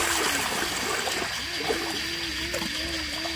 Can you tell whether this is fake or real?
real